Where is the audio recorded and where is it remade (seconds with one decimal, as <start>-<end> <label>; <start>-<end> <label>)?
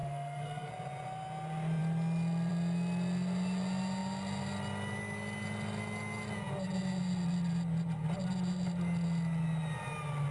0.0-0.7 remade; 0.7-10.3 recorded